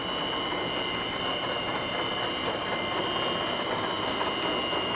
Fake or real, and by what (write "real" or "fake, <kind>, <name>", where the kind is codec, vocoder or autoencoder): real